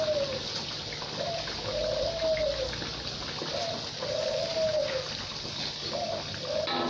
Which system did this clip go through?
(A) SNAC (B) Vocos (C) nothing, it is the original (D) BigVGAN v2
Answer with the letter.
C